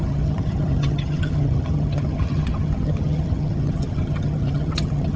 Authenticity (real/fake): fake